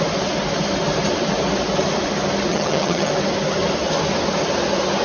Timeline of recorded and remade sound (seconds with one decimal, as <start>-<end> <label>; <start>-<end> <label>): 0.0-2.5 recorded; 2.5-3.1 remade; 3.1-5.0 recorded